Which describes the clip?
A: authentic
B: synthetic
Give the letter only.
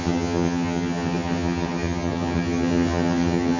B